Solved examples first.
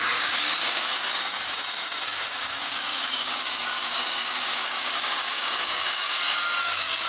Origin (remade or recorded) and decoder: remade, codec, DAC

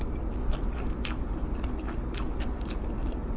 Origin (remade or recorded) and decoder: recorded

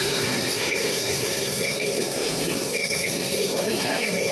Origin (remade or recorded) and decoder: remade, codec, SNAC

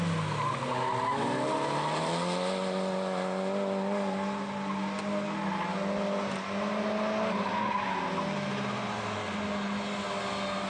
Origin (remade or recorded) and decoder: recorded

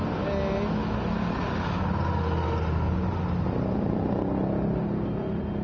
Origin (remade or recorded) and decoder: recorded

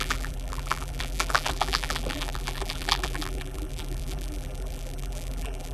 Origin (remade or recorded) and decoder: remade, vocoder, BigVGAN v2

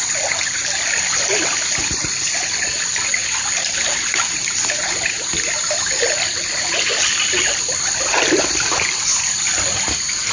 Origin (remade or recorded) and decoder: recorded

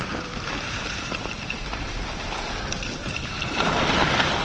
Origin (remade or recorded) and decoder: recorded